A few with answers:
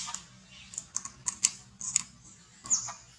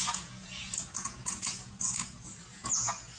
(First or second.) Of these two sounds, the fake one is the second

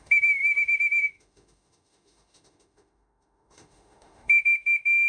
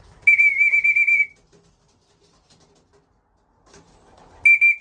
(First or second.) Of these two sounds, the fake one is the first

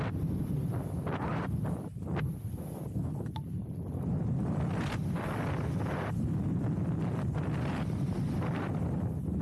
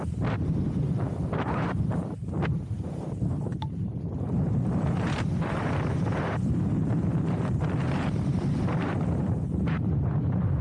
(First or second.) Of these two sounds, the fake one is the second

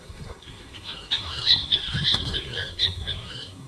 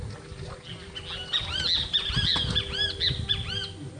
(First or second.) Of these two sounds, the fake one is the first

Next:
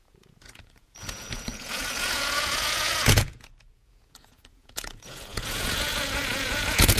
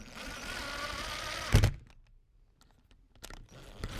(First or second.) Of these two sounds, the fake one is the first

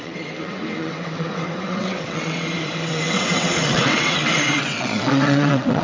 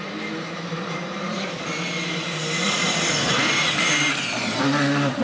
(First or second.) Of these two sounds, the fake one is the first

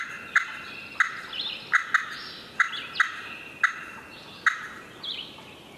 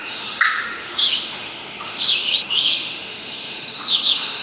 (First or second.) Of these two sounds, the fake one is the second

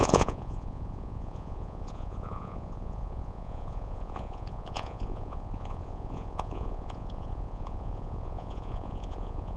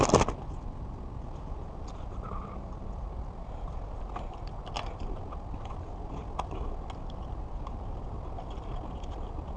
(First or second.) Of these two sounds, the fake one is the first